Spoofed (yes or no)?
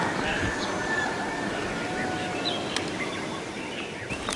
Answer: no